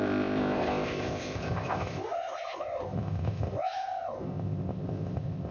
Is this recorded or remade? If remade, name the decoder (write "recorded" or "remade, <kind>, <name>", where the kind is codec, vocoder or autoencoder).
remade, codec, ZipCodec